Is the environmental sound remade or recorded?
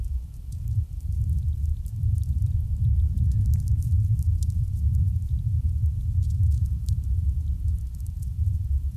remade